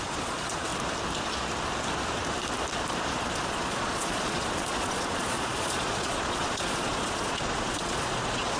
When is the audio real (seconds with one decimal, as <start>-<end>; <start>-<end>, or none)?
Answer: 0.7-3.4